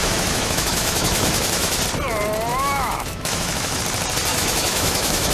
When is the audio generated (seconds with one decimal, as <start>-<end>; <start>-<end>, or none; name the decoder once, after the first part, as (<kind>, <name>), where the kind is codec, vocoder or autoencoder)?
0.0-1.8 (autoencoder, DAC-VAE); 2.5-3.8; 4.3-5.3